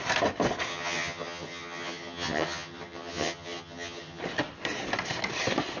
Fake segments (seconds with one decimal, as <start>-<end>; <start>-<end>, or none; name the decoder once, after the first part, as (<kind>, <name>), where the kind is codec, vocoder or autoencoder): 0.7-4.2 (vocoder, HiFi-GAN)